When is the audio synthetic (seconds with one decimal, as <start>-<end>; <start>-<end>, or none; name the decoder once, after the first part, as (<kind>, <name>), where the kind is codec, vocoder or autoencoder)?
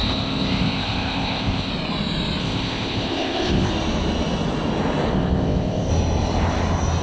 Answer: 0.0-1.7 (codec, ZipCodec); 2.4-3.7; 5.1-5.9